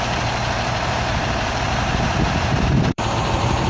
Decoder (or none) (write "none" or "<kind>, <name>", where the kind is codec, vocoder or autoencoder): vocoder, BigVGAN v2